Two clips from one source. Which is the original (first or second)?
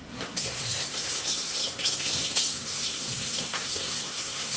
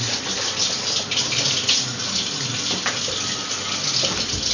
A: second